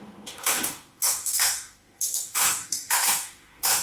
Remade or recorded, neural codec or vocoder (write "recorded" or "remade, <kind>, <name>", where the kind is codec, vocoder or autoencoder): remade, autoencoder, DAC-VAE